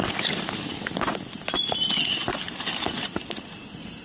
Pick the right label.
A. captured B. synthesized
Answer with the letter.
A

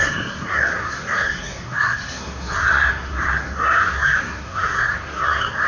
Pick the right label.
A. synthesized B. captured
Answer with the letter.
A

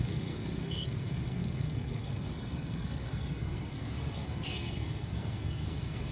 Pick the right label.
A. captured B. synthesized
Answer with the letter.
B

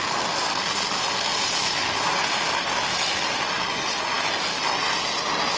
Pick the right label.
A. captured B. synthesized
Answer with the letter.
A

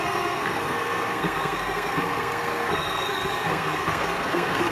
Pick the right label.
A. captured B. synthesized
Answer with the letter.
B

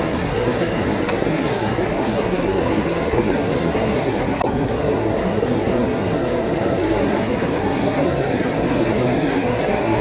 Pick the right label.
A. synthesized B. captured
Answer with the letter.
A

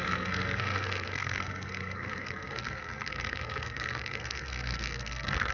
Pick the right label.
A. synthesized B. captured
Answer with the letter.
A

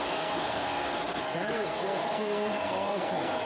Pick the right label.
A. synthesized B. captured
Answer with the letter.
A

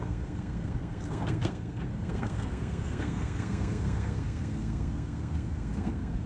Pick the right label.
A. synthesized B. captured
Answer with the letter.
A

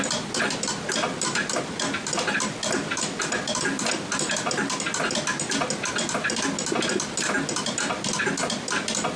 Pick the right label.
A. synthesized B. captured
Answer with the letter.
B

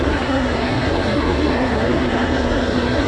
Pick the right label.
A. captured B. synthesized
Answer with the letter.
B